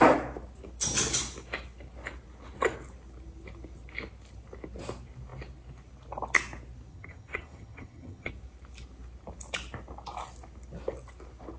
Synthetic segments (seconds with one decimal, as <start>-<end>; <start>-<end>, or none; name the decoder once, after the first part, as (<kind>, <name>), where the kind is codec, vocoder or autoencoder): 6.9-8.3 (vocoder, HiFi-GAN)

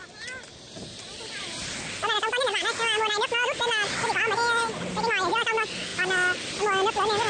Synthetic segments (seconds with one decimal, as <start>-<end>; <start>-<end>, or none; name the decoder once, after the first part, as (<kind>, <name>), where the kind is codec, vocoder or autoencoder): none

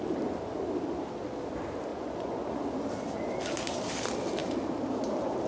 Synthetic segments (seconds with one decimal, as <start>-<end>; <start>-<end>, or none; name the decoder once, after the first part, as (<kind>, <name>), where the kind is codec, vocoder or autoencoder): 1.9-2.6 (vocoder, Vocos)

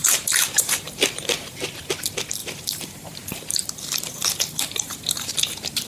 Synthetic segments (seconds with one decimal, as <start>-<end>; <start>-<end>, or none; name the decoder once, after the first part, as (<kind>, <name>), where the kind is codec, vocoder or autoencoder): 0.0-1.6 (vocoder, BigVGAN v2); 2.4-5.9

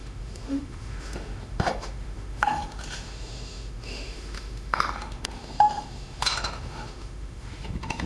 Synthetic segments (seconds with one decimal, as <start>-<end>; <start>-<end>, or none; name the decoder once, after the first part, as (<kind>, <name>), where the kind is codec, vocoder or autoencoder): 0.0-8.1 (autoencoder, DAC-VAE)

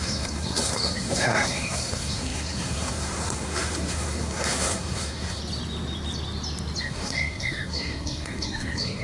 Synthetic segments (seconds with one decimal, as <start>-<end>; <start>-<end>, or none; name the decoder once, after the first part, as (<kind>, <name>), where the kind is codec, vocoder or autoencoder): 0.0-5.4 (codec, SNAC); 6.8-9.0

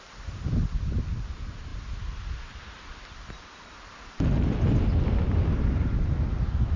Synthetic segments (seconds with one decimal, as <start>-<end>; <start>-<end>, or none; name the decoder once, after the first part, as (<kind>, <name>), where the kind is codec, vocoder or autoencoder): none